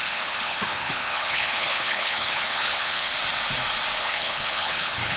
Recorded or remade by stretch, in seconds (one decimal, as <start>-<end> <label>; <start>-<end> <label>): 0.0-3.1 remade; 3.1-4.0 recorded; 4.0-5.2 remade